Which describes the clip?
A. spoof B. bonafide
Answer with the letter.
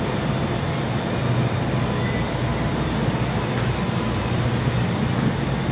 B